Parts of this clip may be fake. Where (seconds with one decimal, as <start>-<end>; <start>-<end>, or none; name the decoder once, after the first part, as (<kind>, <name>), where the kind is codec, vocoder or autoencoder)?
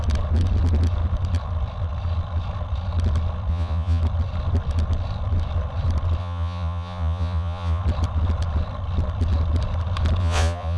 3.5-4.0 (vocoder, Vocos); 6.2-7.8; 10.2-10.8